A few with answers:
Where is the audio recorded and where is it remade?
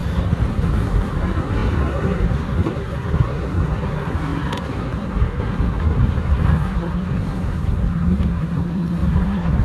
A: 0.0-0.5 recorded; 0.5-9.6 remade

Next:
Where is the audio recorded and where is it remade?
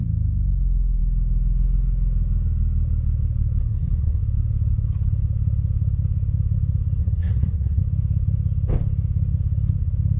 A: 0.0-3.6 recorded; 3.6-4.2 remade; 4.2-7.0 recorded; 7.0-7.8 remade; 7.8-10.2 recorded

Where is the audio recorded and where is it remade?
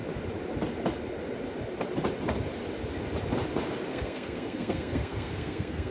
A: 0.0-3.9 recorded; 3.9-5.9 remade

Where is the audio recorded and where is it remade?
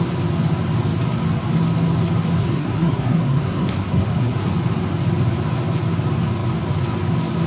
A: 0.0-2.4 recorded; 2.4-4.5 remade; 4.5-7.5 recorded